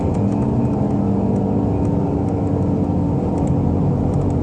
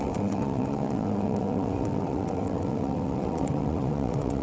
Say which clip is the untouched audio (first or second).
first